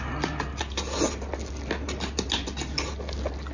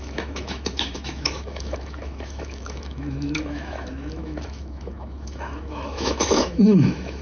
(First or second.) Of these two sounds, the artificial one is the second